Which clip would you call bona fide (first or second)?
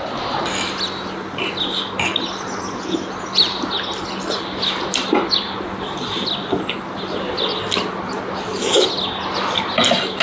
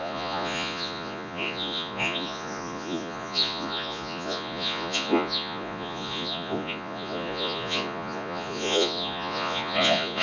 first